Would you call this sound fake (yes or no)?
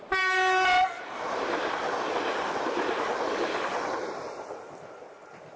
no